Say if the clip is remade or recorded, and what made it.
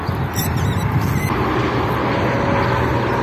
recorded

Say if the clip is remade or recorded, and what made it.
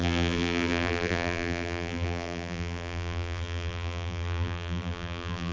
remade, vocoder, BigVGAN v2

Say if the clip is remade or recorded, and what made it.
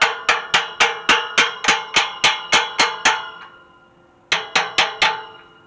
recorded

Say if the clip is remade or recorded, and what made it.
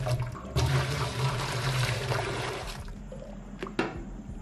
remade, vocoder, BigVGAN v2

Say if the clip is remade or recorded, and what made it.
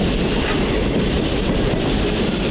remade, vocoder, BigVGAN v2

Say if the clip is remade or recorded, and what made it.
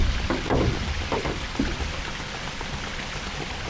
remade, vocoder, BigVGAN v2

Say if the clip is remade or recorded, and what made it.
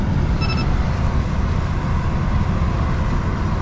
recorded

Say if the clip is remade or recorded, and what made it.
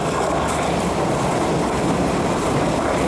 remade, vocoder, BigVGAN v2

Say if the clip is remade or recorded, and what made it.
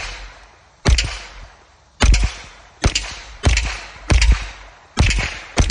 remade, vocoder, BigVGAN v2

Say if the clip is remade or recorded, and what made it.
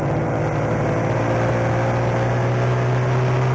recorded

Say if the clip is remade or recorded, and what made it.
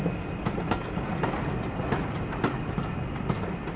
recorded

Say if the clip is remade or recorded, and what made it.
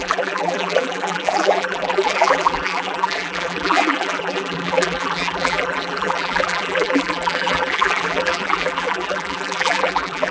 remade, vocoder, BigVGAN v2